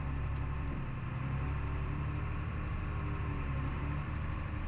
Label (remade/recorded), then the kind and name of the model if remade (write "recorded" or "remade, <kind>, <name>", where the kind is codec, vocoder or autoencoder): remade, vocoder, BigVGAN v2